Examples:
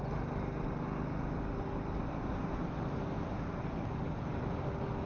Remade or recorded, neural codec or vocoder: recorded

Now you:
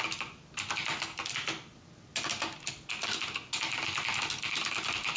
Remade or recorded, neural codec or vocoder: recorded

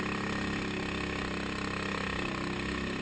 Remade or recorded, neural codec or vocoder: recorded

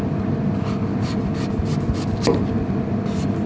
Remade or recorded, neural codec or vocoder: recorded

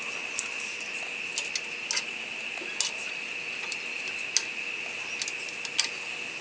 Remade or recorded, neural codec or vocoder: recorded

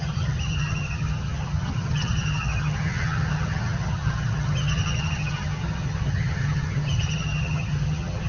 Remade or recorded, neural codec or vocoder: remade, vocoder, HiFi-GAN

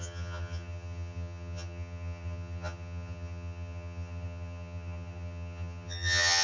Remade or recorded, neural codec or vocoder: remade, vocoder, HiFi-GAN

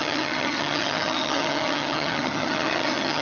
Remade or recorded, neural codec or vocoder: remade, vocoder, HiFi-GAN